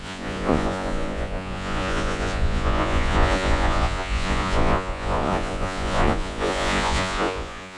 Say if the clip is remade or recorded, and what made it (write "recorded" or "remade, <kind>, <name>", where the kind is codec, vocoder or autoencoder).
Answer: remade, vocoder, Vocos